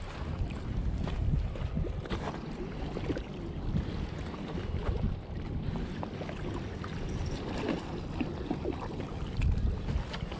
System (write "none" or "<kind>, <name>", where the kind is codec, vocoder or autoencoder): none